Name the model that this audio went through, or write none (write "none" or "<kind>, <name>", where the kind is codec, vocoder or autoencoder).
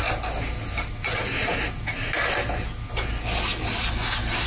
none